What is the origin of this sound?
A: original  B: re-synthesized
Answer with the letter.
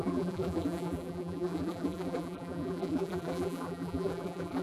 B